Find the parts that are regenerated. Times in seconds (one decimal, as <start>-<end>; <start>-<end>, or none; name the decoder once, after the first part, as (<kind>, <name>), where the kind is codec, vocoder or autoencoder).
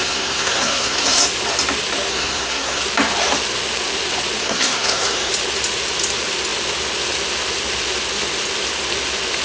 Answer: 0.0-1.2 (codec, SNAC); 2.1-2.8; 4.4-5.3